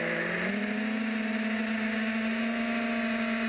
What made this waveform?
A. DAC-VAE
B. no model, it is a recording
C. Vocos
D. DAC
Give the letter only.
B